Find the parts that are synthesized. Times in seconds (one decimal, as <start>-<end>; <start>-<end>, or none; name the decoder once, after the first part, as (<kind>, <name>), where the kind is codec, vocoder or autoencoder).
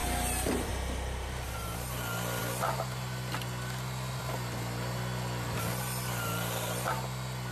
0.0-0.7 (vocoder, BigVGAN v2)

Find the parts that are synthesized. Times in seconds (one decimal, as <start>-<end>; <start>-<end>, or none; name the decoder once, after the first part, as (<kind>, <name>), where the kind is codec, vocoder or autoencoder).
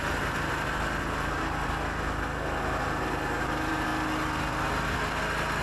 0.0-0.5 (vocoder, BigVGAN v2); 1.0-3.9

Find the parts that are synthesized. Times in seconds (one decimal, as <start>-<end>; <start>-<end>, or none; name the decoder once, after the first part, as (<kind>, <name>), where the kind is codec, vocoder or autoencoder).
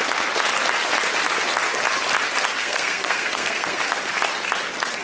2.6-3.8 (codec, SNAC)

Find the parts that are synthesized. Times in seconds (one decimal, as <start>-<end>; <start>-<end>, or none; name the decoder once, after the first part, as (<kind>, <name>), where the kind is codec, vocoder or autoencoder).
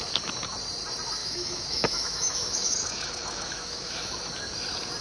1.2-4.2 (autoencoder, DAC-VAE)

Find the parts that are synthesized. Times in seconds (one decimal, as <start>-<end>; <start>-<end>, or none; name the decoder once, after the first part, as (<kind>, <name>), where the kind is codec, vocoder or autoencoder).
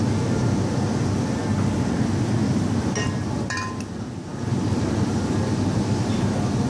none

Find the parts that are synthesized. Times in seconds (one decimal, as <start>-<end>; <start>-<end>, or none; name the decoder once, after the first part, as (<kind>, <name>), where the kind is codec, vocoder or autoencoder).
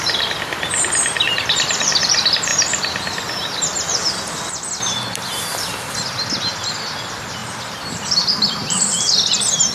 0.0-2.5 (vocoder, BigVGAN v2); 3.6-9.7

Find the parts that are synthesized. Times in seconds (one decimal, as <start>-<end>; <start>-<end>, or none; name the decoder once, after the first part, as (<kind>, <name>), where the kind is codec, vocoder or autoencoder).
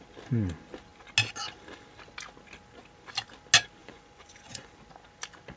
3.8-4.7 (vocoder, Vocos)